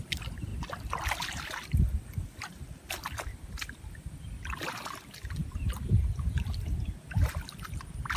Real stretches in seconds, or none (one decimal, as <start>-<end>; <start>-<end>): 0.0-8.2